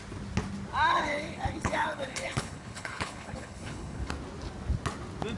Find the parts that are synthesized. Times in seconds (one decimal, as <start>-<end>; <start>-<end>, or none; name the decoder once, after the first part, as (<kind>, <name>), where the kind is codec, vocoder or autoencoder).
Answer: 0.9-4.1 (codec, HILCodec)